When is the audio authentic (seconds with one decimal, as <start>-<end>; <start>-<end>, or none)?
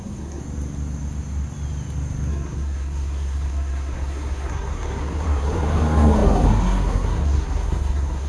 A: 0.4-2.3